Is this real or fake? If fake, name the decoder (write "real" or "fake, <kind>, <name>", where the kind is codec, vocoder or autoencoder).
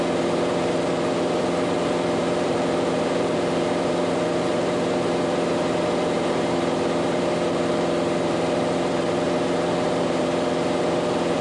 fake, vocoder, BigVGAN v2